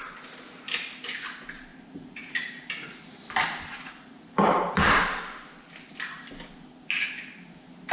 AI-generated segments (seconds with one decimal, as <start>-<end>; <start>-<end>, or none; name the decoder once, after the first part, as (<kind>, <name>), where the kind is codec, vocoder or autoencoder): 1.7-5.0 (vocoder, BigVGAN v2)